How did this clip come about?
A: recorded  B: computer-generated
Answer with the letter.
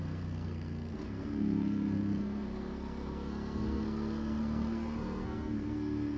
B